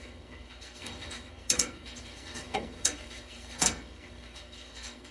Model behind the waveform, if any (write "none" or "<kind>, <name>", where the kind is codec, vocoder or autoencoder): codec, SNAC